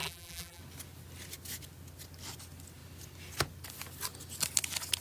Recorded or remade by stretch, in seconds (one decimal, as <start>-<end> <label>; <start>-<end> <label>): 0.0-0.6 remade; 0.6-5.0 recorded